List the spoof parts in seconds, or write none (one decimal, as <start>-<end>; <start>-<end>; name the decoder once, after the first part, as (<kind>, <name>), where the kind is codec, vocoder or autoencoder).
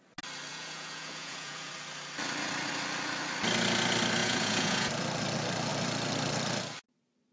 0.5-1.7 (vocoder, Vocos); 4.2-4.9